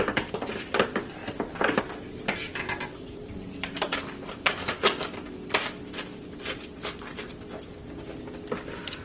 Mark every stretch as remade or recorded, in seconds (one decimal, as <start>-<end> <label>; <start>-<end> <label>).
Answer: 0.0-2.9 recorded; 2.9-4.3 remade; 4.3-9.0 recorded